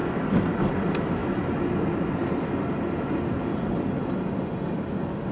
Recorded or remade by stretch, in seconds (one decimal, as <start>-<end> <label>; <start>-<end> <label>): 0.0-5.3 recorded